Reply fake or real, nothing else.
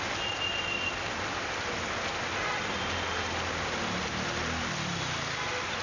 real